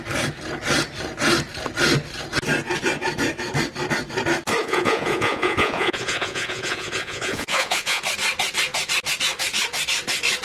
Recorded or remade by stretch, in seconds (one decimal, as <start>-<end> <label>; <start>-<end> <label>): 0.0-4.6 recorded; 4.6-8.0 remade; 8.0-10.4 recorded